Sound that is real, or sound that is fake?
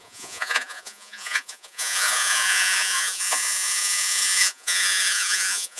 fake